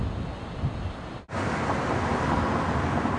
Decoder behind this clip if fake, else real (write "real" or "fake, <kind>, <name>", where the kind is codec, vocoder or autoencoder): real